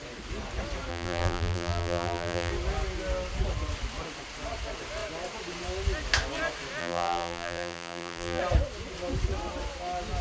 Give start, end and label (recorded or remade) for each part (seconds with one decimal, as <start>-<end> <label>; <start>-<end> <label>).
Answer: 0.0-0.9 recorded; 0.9-2.5 remade; 2.5-6.8 recorded; 6.8-8.4 remade; 8.4-10.2 recorded